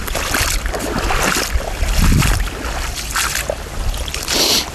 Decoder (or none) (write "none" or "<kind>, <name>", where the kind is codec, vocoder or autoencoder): none